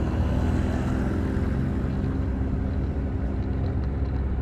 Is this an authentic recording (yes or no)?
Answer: yes